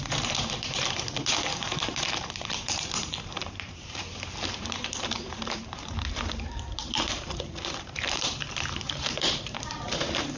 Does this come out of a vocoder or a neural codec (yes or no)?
yes